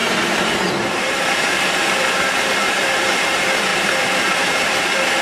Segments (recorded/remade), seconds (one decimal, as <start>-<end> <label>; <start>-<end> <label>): 0.0-5.2 remade